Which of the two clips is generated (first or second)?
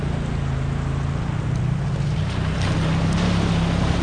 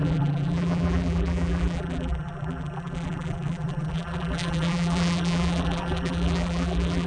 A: second